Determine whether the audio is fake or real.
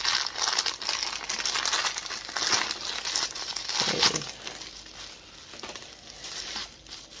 real